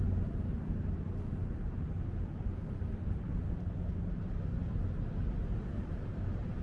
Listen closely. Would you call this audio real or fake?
real